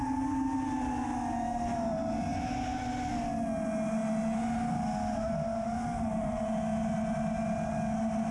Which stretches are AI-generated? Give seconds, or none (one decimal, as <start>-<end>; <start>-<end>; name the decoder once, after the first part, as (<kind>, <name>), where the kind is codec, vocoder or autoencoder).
none